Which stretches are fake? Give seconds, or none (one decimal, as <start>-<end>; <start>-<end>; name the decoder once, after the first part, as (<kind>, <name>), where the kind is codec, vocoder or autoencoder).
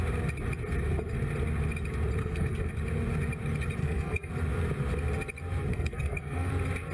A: 2.2-2.7 (codec, SNAC); 3.8-4.3; 5.7-6.5